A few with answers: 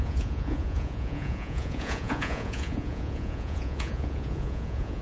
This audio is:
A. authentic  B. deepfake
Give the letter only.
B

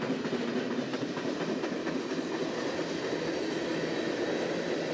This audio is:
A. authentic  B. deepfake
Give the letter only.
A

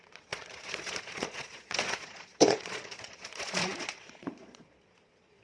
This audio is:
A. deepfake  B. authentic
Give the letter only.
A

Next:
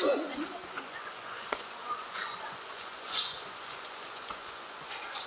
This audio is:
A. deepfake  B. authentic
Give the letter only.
A